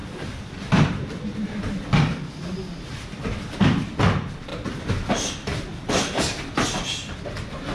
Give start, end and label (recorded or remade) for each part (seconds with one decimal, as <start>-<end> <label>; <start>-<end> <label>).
0.0-4.5 recorded; 4.5-5.1 remade; 5.1-5.7 recorded; 5.7-6.3 remade; 6.3-7.7 recorded